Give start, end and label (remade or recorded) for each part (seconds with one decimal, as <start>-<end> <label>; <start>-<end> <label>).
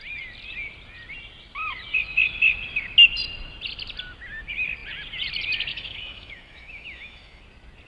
0.0-5.7 recorded; 5.7-7.4 remade; 7.4-7.9 recorded